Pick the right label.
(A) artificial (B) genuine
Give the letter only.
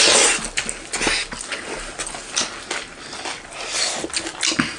B